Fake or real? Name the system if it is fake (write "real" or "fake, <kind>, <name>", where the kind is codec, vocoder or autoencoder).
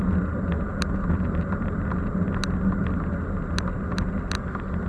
real